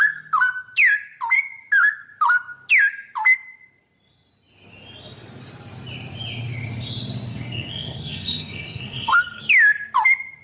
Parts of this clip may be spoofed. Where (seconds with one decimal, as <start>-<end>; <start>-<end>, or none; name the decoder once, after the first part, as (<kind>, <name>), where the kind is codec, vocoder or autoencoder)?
7.3-9.4 (codec, SNAC)